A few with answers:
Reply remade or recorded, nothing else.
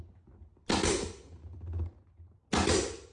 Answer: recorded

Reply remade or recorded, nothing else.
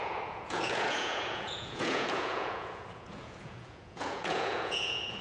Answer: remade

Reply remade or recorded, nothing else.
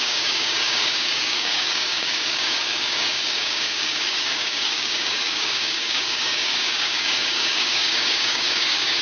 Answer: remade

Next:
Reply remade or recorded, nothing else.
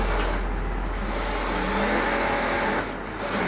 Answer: recorded